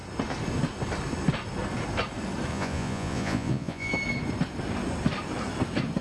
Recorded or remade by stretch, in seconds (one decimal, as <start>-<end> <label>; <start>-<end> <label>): 0.0-2.5 recorded; 2.5-3.9 remade; 3.9-6.0 recorded